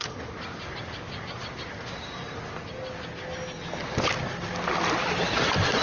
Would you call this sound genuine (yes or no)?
yes